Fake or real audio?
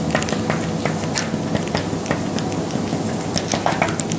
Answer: real